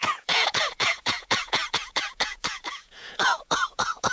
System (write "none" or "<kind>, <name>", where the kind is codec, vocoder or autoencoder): vocoder, Vocos